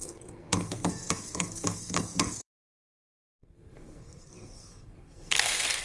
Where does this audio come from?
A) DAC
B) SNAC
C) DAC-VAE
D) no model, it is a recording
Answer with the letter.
B